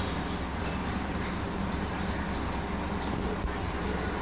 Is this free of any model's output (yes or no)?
yes